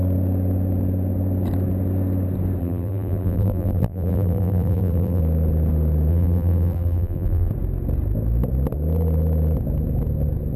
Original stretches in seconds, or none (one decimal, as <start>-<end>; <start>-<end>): 0.0-2.6; 5.2-6.1; 7.5-10.6

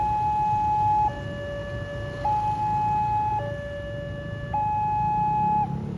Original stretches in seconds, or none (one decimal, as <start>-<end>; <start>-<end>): 0.0-6.0

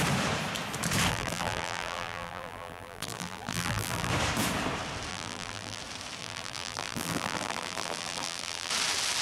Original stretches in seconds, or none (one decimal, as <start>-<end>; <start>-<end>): 0.0-1.1; 4.1-5.1; 5.8-6.2; 8.7-9.2

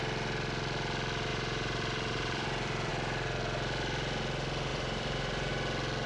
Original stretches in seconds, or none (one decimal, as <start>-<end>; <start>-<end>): 0.0-1.3; 2.9-4.7; 5.5-6.1